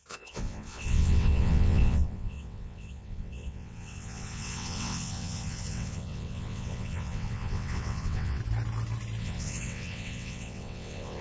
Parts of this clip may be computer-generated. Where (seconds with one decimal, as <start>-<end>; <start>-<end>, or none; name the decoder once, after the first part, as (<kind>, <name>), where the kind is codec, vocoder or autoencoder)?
0.0-8.4 (vocoder, WaveNeXt); 9.2-11.2